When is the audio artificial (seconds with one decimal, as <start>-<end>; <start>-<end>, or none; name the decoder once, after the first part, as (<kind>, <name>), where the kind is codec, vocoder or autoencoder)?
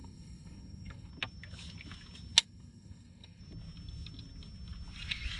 0.0-1.1 (codec, SNAC); 2.4-3.4